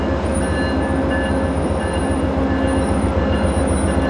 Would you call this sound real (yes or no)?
yes